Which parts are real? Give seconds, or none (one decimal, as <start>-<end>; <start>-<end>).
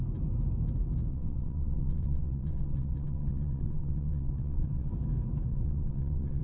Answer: 0.0-1.1; 4.9-5.5